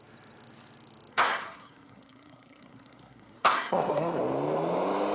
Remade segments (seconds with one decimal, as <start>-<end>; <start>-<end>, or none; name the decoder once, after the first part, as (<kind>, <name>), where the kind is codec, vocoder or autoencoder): 1.1-4.2 (codec, SNAC)